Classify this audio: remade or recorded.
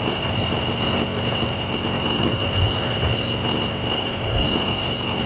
remade